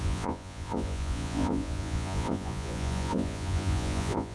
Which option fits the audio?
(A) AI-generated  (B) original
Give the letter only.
A